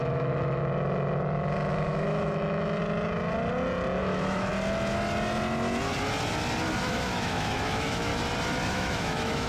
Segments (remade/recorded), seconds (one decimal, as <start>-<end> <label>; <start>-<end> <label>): 0.0-0.6 remade; 0.6-1.7 recorded; 1.7-2.8 remade; 2.8-4.0 recorded; 4.0-4.5 remade; 4.5-6.8 recorded; 6.8-8.1 remade; 8.1-8.7 recorded; 8.7-9.5 remade